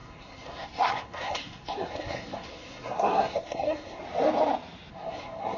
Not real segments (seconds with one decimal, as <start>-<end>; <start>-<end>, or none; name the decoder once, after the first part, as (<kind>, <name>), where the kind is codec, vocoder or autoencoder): 0.0-4.0 (codec, SNAC); 4.9-5.6